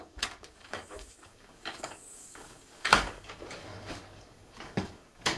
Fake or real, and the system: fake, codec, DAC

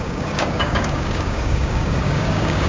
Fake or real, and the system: fake, codec, DAC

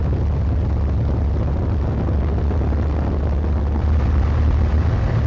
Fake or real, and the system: real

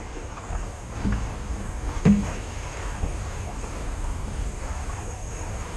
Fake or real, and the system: fake, codec, DAC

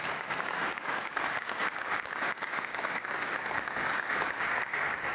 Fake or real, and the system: fake, codec, DAC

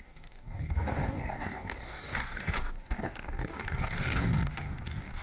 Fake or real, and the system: fake, codec, DAC